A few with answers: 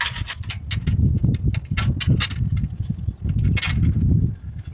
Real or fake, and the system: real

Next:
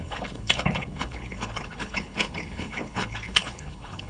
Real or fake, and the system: fake, codec, HILCodec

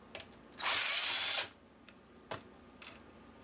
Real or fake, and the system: real